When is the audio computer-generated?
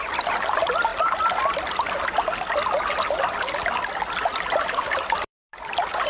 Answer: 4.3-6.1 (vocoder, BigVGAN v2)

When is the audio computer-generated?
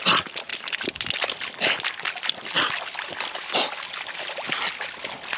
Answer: none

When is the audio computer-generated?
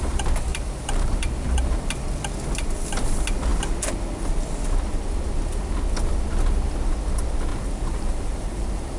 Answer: 0.5-1.9 (vocoder, BigVGAN v2); 7.5-9.0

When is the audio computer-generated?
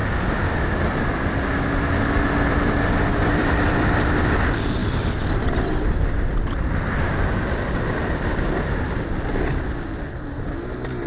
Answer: 3.1-4.2 (vocoder, BigVGAN v2); 4.8-9.4